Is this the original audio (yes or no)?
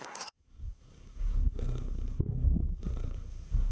no